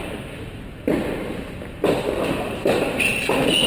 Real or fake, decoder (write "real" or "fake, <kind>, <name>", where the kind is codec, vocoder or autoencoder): real